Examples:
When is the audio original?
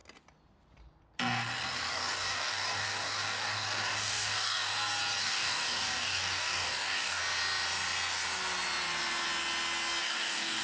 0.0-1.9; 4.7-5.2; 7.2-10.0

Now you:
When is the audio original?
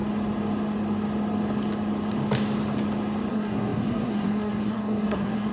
0.0-3.3